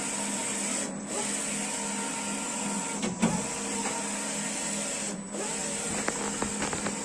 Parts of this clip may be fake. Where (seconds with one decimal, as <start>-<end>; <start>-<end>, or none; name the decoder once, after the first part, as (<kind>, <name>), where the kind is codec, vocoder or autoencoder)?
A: none